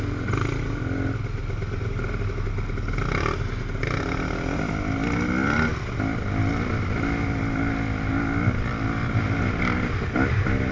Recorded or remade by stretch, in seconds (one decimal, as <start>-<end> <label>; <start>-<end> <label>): 0.0-10.7 recorded